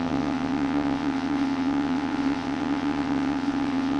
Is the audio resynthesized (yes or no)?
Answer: yes